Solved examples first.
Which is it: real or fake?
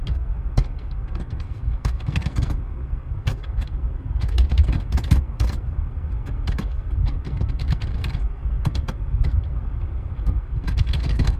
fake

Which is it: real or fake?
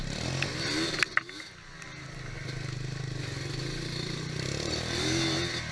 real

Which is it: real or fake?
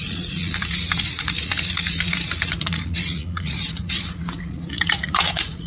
fake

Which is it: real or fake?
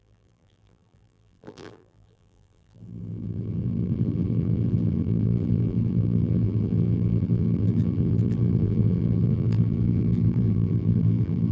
fake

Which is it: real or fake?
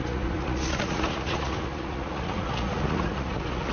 fake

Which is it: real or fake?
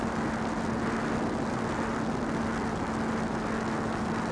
real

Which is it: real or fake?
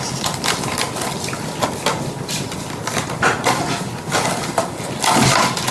real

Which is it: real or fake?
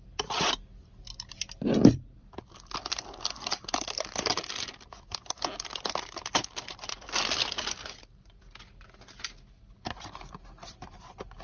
real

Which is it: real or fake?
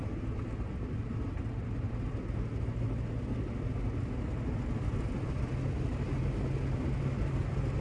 real